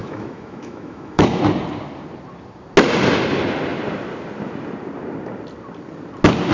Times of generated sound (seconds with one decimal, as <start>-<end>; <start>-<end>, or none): 0.0-1.4